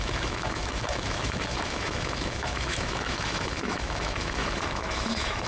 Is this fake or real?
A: fake